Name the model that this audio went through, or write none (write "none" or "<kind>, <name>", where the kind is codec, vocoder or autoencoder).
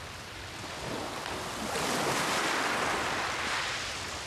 none